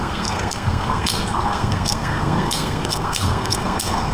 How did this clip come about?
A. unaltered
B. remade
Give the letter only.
B